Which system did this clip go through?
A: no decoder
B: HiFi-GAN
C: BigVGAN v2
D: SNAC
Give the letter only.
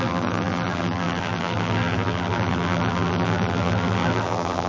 C